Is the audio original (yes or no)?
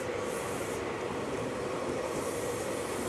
yes